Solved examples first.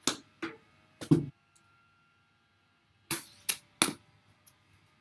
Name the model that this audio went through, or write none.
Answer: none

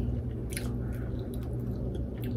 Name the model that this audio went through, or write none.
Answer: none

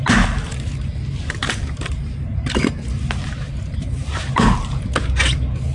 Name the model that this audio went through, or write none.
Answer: vocoder, BigVGAN v2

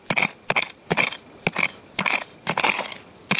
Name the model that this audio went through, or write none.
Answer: none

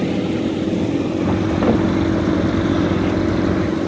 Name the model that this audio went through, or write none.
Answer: none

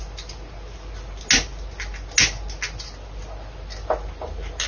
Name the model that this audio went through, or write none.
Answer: none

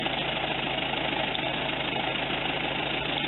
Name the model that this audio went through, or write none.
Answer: none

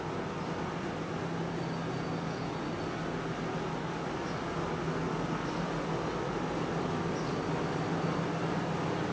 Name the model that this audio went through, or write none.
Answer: none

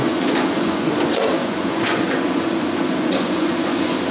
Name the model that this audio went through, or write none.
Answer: vocoder, Vocos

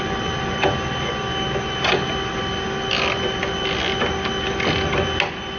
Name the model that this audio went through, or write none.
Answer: none